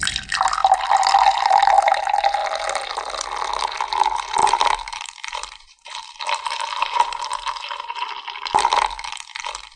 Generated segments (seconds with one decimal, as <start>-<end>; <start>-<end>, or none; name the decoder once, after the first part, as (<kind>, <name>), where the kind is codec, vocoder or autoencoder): 4.4-8.1 (vocoder, BigVGAN v2)